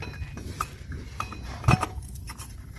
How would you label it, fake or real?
real